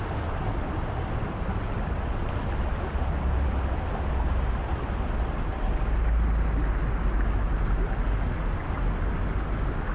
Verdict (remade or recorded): recorded